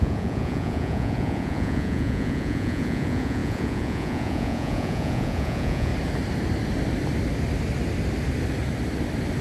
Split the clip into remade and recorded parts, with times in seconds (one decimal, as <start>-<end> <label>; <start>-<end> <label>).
0.0-5.9 remade; 5.9-9.4 recorded